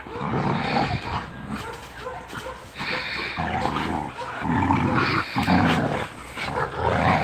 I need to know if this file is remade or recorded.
recorded